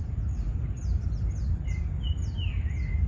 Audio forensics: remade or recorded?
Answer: recorded